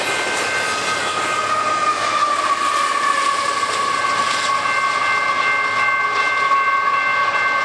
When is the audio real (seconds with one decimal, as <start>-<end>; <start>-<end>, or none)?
0.0-2.9; 4.5-7.6